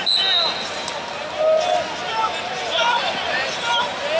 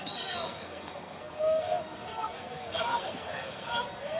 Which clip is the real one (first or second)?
first